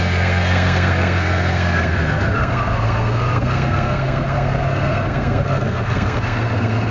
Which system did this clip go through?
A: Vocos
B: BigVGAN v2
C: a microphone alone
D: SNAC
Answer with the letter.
D